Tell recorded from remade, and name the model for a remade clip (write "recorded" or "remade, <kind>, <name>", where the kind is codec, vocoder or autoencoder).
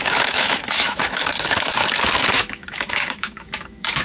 remade, autoencoder, DAC-VAE